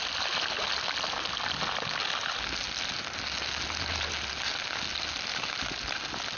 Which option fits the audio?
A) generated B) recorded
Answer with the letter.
B